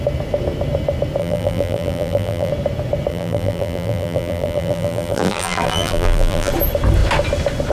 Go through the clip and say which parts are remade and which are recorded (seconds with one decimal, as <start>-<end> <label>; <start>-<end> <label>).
0.0-1.2 recorded; 1.2-2.5 remade; 2.5-3.1 recorded; 3.1-6.5 remade; 6.5-7.7 recorded